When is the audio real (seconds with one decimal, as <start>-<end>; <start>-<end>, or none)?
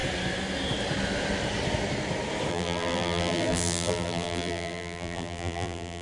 0.0-2.5